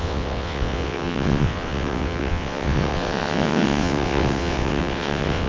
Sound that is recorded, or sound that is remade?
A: remade